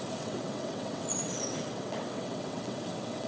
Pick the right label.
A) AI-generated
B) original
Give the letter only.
A